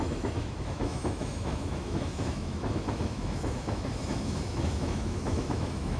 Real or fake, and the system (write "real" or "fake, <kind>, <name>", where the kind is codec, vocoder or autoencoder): fake, autoencoder, DAC-VAE